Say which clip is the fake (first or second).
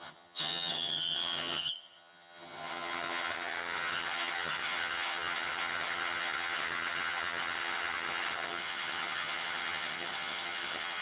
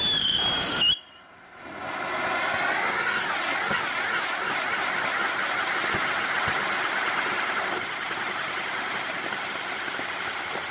first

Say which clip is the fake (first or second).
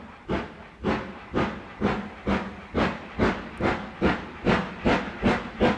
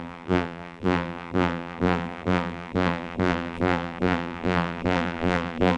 second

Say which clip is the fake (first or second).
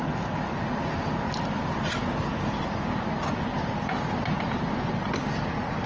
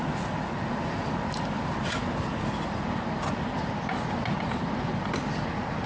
second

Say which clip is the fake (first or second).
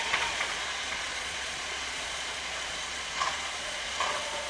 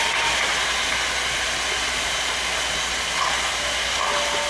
first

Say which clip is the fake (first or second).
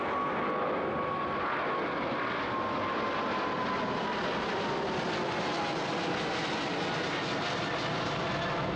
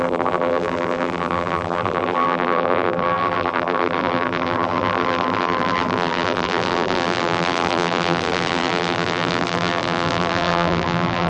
second